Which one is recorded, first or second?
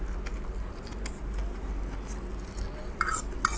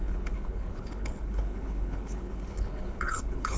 first